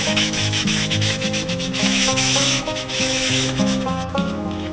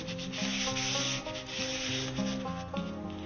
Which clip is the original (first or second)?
second